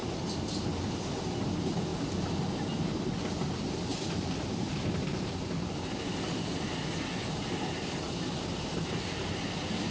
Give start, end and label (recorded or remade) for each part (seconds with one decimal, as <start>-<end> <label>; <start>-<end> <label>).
0.0-9.9 recorded